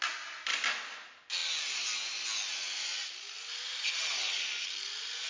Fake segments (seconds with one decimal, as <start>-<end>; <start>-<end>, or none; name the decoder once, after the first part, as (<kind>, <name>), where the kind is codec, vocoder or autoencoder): none